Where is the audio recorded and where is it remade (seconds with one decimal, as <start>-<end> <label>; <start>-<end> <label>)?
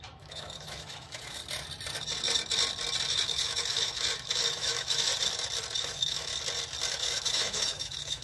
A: 0.0-1.4 remade; 1.4-3.1 recorded; 3.1-5.1 remade; 5.1-5.8 recorded; 5.8-6.3 remade; 6.3-6.9 recorded; 6.9-8.2 remade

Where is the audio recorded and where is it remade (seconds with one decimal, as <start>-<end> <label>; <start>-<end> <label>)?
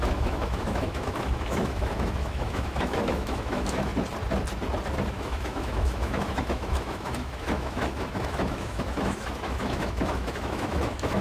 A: 0.0-3.9 remade; 3.9-5.1 recorded; 5.1-11.2 remade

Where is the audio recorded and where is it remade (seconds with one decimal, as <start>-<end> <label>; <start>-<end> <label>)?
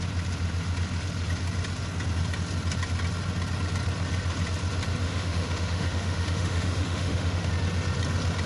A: 0.0-5.0 recorded; 5.0-7.5 remade; 7.5-8.5 recorded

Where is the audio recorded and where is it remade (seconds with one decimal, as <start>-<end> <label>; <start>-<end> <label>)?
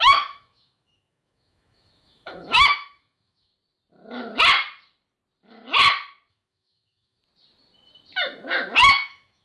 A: 0.0-3.5 remade; 3.5-6.3 recorded; 6.3-7.2 remade; 7.2-8.9 recorded; 8.9-9.4 remade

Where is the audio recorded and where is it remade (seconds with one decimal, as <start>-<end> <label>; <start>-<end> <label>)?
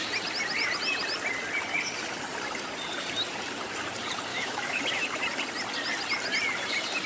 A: 0.0-4.3 recorded; 4.3-4.8 remade; 4.8-7.1 recorded